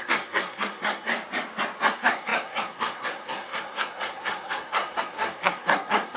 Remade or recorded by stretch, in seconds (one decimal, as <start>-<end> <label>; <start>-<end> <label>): 0.0-1.1 remade; 1.1-1.9 recorded; 1.9-6.2 remade